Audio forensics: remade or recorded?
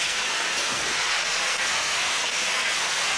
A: remade